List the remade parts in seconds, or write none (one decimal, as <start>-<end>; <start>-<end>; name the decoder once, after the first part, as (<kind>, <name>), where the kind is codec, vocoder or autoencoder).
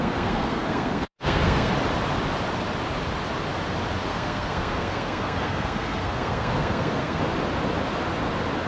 0.0-1.7 (codec, SNAC); 4.1-7.2